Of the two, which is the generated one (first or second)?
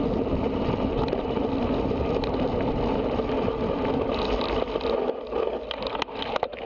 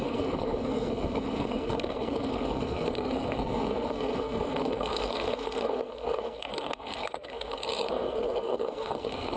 second